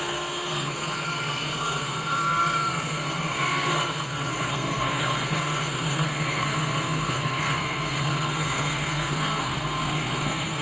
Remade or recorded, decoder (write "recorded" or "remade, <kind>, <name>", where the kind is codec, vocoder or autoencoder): remade, codec, SNAC